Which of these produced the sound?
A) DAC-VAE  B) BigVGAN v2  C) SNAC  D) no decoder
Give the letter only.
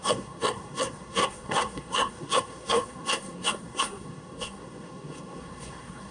C